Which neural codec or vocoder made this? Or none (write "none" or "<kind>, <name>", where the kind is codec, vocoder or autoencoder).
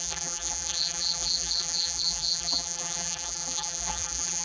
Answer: vocoder, BigVGAN v2